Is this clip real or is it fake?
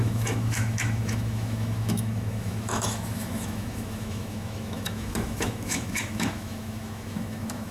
fake